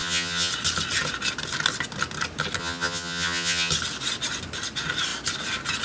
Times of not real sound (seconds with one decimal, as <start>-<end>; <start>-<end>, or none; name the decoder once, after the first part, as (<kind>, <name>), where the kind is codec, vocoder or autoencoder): 0.0-0.5 (vocoder, HiFi-GAN); 2.6-3.7

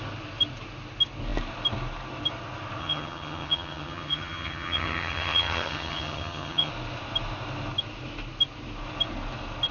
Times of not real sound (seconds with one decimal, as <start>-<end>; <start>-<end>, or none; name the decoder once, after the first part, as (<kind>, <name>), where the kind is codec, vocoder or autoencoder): 2.8-6.7 (vocoder, HiFi-GAN)

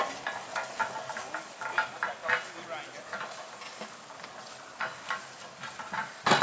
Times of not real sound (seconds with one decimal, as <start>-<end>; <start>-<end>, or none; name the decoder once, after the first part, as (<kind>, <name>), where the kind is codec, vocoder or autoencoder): none

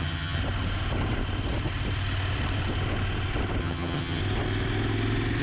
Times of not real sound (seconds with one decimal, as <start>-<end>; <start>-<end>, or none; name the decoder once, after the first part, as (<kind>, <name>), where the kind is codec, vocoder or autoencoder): 0.0-0.4 (vocoder, HiFi-GAN); 3.6-4.2

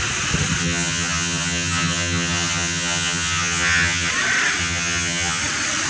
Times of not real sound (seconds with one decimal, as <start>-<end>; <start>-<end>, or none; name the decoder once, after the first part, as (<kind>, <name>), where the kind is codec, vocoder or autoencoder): 0.6-4.1 (vocoder, HiFi-GAN); 4.6-5.4

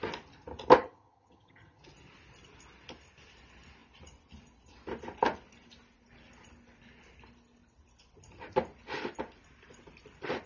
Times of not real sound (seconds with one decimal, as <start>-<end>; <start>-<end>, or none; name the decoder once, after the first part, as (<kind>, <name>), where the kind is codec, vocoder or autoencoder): 0.8-1.8 (vocoder, HiFi-GAN)